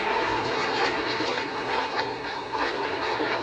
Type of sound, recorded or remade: remade